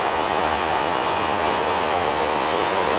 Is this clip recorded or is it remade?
remade